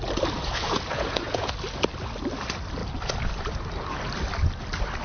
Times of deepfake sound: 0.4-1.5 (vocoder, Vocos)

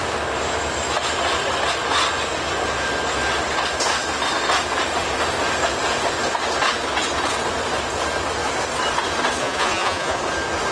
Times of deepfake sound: 9.4-10.2 (vocoder, Vocos)

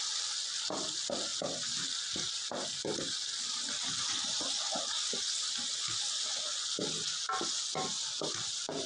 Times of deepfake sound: none